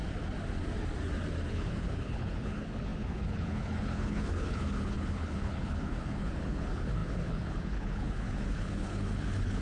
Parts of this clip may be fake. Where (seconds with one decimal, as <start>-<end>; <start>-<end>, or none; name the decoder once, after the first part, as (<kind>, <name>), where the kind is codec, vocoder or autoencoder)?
1.5-9.6 (codec, HILCodec)